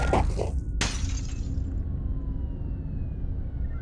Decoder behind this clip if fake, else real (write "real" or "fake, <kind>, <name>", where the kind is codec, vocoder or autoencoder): real